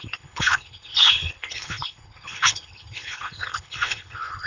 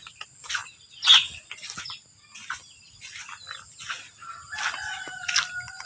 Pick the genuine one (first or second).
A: second